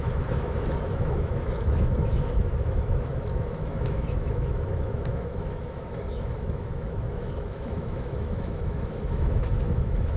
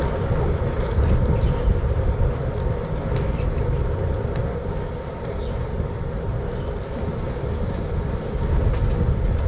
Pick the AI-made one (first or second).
first